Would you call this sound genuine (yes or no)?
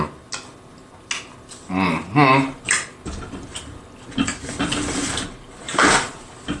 yes